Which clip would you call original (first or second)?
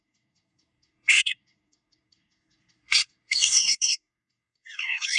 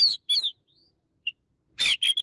second